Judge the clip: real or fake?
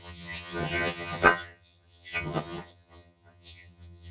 fake